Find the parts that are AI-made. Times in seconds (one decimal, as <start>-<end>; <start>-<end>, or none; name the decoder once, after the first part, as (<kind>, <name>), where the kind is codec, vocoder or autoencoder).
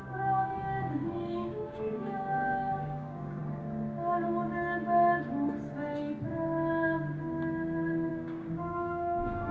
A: 0.0-3.4 (codec, DAC); 8.1-9.5